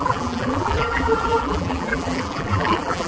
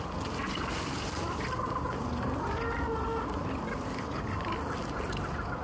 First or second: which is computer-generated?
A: first